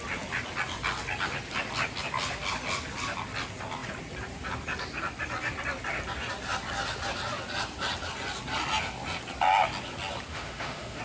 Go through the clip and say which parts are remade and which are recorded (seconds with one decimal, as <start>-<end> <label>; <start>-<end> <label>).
0.0-10.3 recorded; 10.3-11.0 remade